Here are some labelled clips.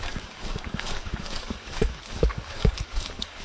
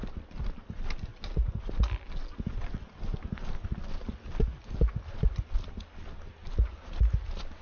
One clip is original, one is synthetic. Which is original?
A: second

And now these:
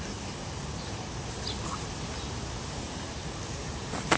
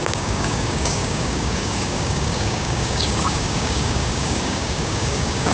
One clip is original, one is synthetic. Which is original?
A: first